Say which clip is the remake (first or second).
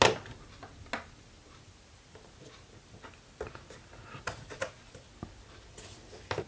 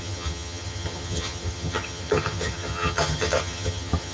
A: second